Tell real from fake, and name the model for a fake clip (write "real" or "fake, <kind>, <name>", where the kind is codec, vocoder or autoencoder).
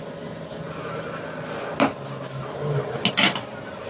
real